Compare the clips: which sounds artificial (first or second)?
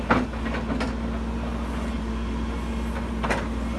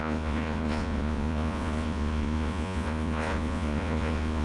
second